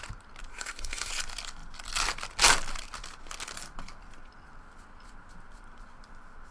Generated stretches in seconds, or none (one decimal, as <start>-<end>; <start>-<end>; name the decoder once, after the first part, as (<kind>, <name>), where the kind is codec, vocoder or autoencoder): 0.5-1.1 (codec, SNAC)